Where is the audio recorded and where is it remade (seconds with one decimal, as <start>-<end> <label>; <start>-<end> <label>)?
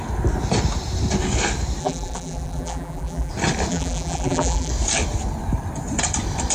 0.0-1.8 recorded; 1.8-3.3 remade; 3.3-3.7 recorded; 3.7-4.7 remade; 4.7-6.5 recorded